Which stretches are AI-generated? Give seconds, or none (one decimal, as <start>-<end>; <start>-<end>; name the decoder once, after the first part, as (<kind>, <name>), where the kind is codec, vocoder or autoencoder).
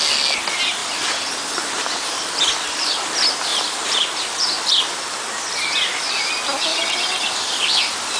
0.8-1.8 (vocoder, BigVGAN v2); 3.5-6.0